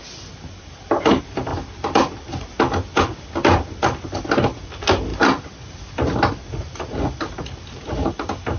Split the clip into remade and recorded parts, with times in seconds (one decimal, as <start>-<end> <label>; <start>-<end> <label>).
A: 0.0-1.5 recorded; 1.5-2.5 remade; 2.5-8.6 recorded